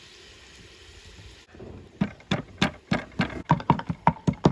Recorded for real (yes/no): yes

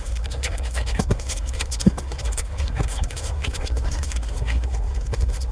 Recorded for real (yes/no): no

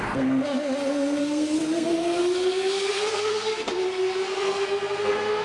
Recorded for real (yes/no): no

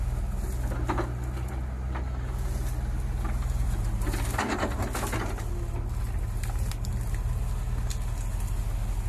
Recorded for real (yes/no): yes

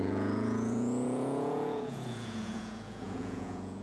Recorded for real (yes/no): no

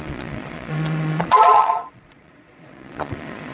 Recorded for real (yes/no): no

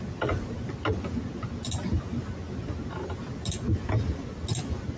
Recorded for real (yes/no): yes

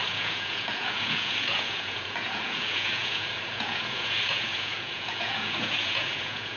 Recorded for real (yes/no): no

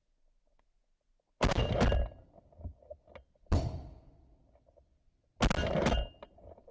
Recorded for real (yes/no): yes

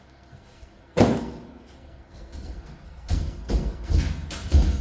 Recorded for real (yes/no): no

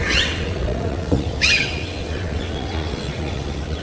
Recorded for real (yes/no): no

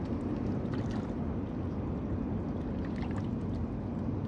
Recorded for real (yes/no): yes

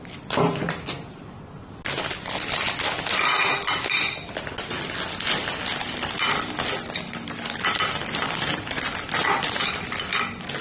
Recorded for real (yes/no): yes